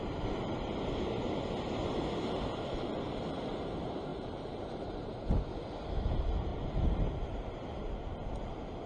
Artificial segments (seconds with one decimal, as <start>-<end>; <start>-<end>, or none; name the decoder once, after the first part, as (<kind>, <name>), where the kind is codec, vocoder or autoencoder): 4.1-5.2 (vocoder, BigVGAN v2); 6.5-7.0